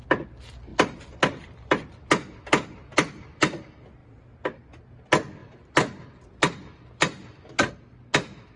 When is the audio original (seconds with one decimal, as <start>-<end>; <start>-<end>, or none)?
0.0-0.7; 3.6-4.0; 4.8-5.4; 7.7-8.6